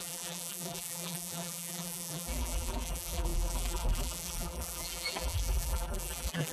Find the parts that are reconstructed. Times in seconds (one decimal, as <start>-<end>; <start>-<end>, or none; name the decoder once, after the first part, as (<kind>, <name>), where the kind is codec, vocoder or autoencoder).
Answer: 0.0-6.5 (vocoder, BigVGAN v2)

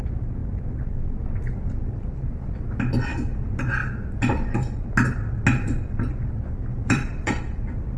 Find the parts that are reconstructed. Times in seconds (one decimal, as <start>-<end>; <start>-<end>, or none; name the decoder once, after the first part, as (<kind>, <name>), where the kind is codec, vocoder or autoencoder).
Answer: 6.8-7.6 (vocoder, BigVGAN v2)